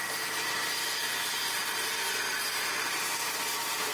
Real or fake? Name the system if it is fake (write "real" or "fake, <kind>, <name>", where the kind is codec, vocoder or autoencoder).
real